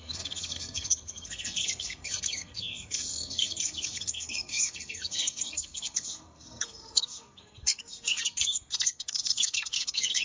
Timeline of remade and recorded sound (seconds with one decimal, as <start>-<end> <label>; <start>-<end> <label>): 0.0-10.2 remade